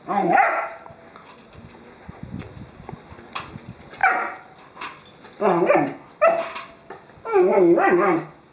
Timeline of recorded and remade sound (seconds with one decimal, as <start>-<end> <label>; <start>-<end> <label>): 0.0-8.5 recorded